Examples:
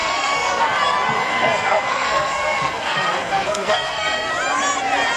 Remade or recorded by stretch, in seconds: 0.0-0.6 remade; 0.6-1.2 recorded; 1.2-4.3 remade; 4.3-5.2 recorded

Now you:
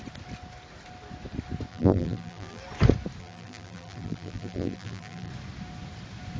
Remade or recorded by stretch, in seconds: 0.0-1.7 recorded; 1.7-2.6 remade; 2.6-3.2 recorded; 3.2-5.3 remade; 5.3-6.4 recorded

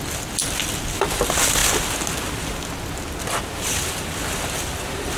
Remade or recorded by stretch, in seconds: 0.0-5.2 recorded